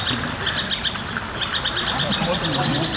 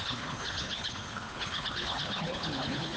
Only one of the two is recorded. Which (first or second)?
first